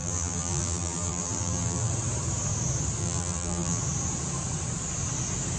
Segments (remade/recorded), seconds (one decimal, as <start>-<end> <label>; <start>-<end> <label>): 0.0-1.9 remade; 1.9-3.0 recorded; 3.0-3.8 remade; 3.8-5.6 recorded